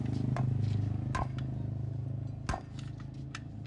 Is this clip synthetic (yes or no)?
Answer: no